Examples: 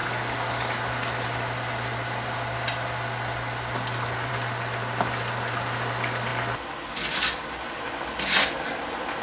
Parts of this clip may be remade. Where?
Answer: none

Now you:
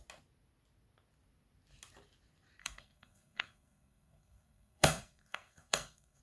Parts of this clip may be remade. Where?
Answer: 2.6-6.2

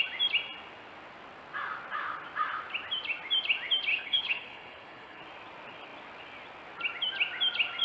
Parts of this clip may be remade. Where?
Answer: 3.9-5.2

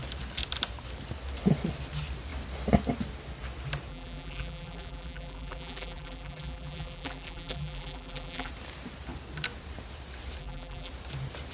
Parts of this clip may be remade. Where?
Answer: 3.9-8.5; 10.4-10.9

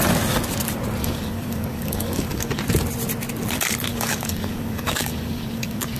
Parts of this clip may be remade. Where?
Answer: 1.0-2.6; 3.9-6.0

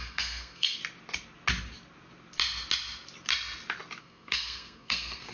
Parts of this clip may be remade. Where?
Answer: 0.0-0.8; 4.0-5.3